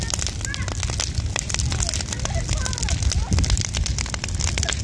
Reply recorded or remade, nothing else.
recorded